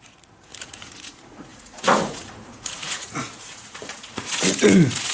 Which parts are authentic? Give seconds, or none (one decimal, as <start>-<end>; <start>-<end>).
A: none